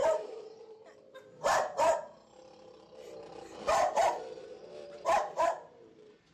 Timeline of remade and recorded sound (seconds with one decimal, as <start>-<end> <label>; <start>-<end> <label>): 0.0-1.9 remade; 1.9-3.9 recorded; 3.9-6.3 remade